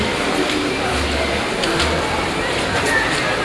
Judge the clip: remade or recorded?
recorded